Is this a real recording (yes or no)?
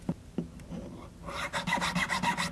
yes